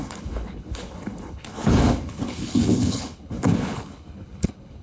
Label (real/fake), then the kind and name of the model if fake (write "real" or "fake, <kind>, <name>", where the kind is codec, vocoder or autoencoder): fake, codec, HILCodec